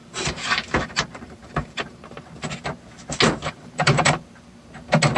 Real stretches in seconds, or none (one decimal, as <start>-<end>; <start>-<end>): 2.3-3.4; 4.2-5.2